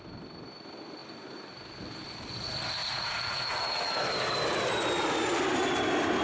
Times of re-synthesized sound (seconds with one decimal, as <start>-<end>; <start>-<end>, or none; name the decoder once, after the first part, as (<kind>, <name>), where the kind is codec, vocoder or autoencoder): 2.8-3.9 (vocoder, Vocos)